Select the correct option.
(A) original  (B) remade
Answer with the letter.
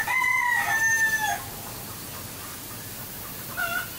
A